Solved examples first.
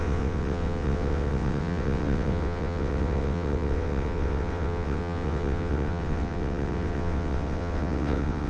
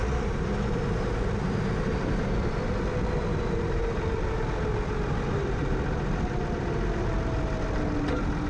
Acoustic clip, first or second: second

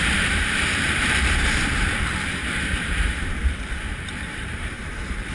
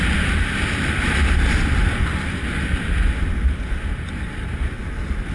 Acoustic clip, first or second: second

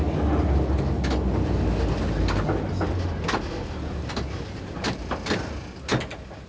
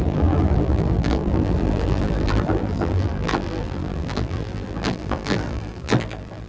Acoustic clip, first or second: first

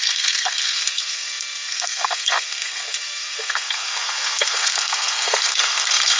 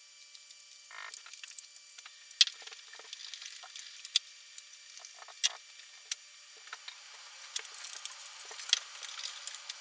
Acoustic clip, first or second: second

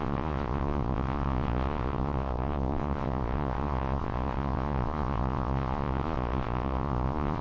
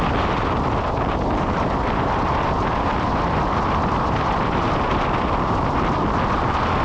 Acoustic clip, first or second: second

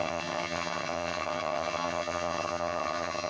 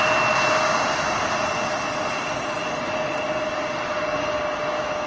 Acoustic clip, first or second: second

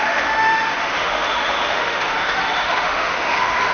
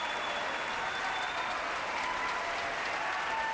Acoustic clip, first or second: second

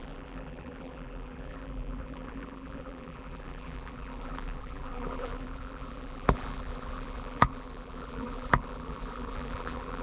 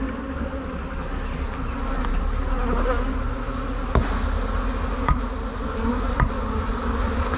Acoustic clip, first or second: second